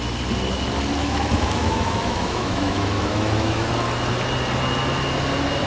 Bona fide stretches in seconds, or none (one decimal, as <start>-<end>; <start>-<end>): 0.0-1.0; 3.7-5.7